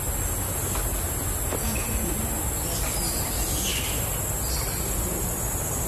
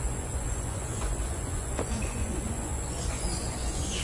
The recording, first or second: first